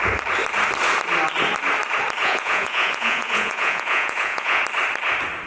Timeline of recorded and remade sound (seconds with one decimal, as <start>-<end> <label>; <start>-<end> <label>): 0.0-2.2 recorded; 2.2-4.6 remade; 4.6-5.5 recorded